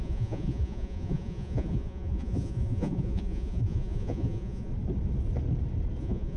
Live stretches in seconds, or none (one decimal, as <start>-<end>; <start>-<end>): 4.7-6.0